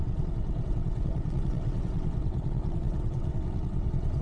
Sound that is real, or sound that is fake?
fake